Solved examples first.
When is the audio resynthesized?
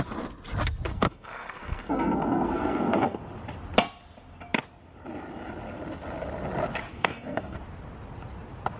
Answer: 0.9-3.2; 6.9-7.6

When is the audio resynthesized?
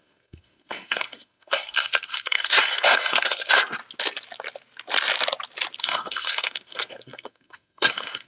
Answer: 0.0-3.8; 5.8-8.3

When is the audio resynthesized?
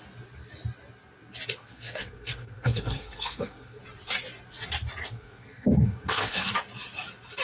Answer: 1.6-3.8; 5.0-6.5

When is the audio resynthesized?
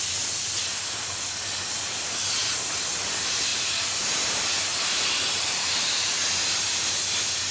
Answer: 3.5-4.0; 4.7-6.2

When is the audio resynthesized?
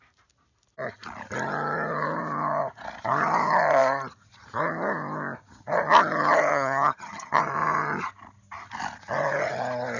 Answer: 6.5-7.4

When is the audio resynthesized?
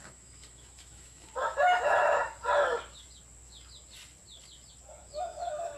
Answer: 0.0-2.2; 5.0-5.8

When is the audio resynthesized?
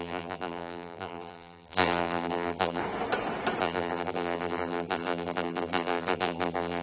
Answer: 0.0-2.8; 3.6-6.8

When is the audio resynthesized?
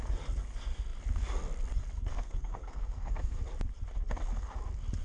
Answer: 2.1-3.4